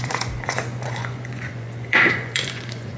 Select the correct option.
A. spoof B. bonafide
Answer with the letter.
A